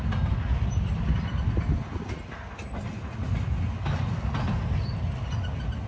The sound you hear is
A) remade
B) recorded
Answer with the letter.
B